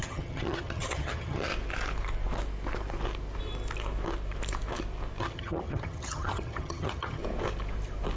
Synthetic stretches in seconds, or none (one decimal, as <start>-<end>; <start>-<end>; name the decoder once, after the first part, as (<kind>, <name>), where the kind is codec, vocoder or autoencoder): 0.0-1.5 (vocoder, HiFi-GAN); 5.2-7.2